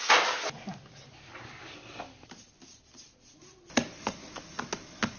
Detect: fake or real real